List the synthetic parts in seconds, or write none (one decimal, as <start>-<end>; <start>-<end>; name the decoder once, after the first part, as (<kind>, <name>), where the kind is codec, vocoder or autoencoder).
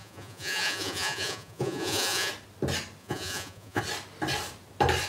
0.0-2.3 (vocoder, Vocos); 3.0-3.8